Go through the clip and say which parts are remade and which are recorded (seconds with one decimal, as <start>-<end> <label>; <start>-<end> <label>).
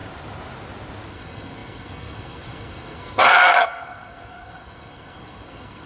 0.0-1.1 recorded; 1.1-5.9 remade